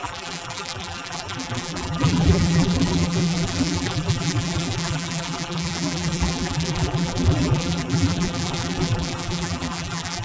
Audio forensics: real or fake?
fake